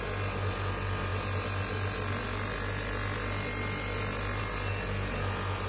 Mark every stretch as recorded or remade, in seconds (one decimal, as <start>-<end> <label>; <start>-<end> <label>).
0.0-5.7 recorded